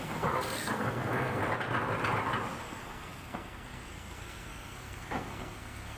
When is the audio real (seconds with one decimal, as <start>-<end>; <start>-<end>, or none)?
1.4-2.6